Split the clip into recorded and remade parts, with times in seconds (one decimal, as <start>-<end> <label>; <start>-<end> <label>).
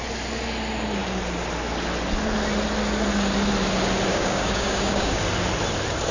0.0-4.1 recorded; 4.1-5.2 remade; 5.2-6.1 recorded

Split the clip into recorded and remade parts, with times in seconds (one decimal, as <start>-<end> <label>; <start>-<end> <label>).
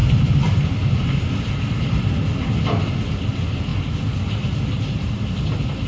0.0-5.9 recorded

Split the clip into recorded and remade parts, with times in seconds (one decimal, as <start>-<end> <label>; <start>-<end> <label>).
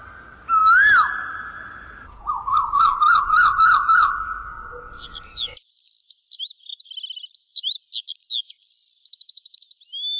0.0-10.2 recorded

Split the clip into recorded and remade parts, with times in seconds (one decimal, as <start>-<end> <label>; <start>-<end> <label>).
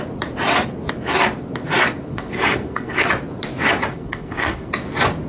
0.0-2.1 recorded; 2.1-3.1 remade; 3.1-3.9 recorded; 3.9-4.7 remade; 4.7-5.3 recorded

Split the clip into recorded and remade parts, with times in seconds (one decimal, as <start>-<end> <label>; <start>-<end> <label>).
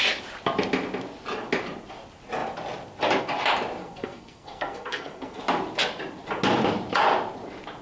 0.0-3.8 recorded; 3.8-5.4 remade; 5.4-7.8 recorded